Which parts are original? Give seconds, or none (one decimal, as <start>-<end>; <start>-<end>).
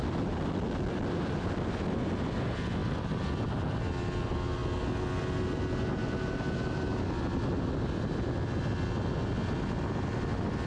0.0-10.7